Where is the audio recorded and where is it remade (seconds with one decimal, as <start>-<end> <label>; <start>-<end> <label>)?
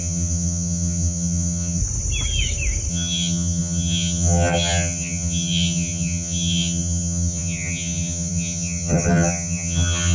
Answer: 0.0-1.8 remade; 1.8-2.9 recorded; 2.9-10.1 remade